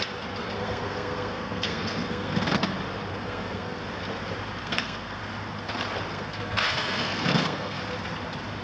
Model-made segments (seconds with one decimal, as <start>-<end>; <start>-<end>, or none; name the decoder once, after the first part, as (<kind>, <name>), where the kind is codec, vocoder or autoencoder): 0.4-2.7 (codec, SNAC); 3.1-3.8; 4.6-5.2; 6.1-7.8